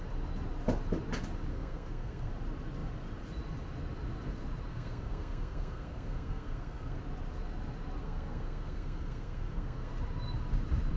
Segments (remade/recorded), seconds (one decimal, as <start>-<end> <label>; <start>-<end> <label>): 0.0-1.5 recorded; 1.5-2.3 remade; 2.3-4.7 recorded; 4.7-7.0 remade; 7.0-8.0 recorded; 8.0-9.9 remade; 9.9-11.0 recorded